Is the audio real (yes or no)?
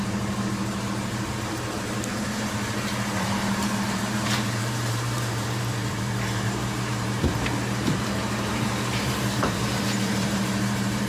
no